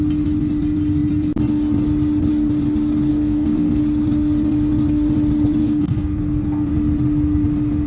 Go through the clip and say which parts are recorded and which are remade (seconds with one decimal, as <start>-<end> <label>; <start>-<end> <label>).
0.0-3.1 recorded; 3.1-3.8 remade; 3.8-5.6 recorded; 5.6-6.7 remade; 6.7-7.9 recorded